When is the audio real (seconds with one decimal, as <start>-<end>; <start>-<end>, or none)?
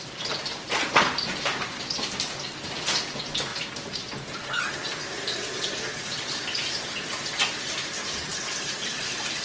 0.0-0.8; 2.4-8.3; 8.9-9.4